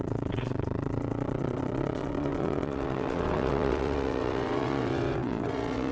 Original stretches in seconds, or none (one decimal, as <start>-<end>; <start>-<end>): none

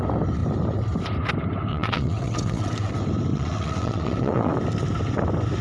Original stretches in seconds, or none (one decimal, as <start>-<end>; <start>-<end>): 0.0-1.7; 2.9-3.3; 4.5-5.6

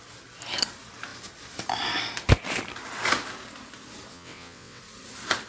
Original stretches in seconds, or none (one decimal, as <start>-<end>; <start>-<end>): 0.0-4.1; 4.8-5.5

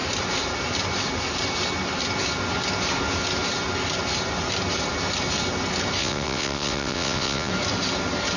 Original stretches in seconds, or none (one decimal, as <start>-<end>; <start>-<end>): 0.0-6.0; 7.5-8.4